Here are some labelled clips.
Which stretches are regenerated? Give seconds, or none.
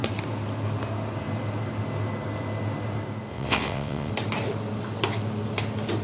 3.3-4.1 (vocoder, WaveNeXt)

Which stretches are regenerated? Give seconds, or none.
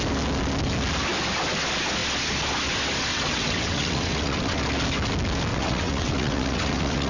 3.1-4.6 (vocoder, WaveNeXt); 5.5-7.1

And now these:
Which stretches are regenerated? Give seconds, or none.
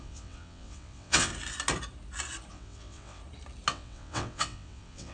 0.0-1.3 (vocoder, WaveNeXt); 2.5-3.2; 3.7-5.1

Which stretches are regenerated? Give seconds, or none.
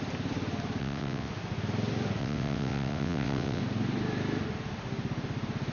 0.8-1.3 (vocoder, WaveNeXt); 2.2-3.6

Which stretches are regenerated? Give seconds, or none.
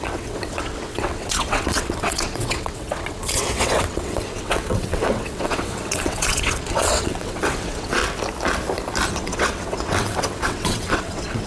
0.0-8.0 (vocoder, WaveNeXt); 9.1-11.5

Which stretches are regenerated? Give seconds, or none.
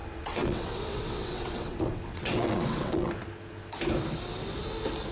0.0-3.1 (vocoder, WaveNeXt)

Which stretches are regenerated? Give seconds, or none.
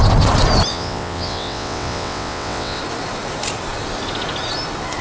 0.7-2.8 (vocoder, WaveNeXt)